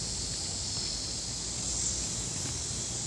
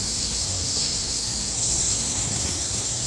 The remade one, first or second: second